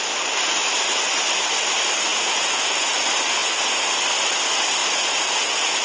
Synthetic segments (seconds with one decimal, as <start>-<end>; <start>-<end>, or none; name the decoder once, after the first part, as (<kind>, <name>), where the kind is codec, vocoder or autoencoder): 2.1-2.9 (vocoder, Vocos); 3.4-4.0; 4.8-5.8